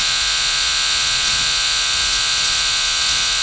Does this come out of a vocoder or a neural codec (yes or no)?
yes